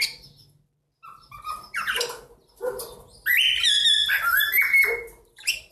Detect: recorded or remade recorded